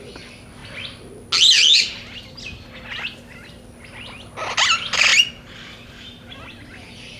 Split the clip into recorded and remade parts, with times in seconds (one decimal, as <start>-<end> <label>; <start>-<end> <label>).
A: 0.0-5.1 recorded; 5.1-7.2 remade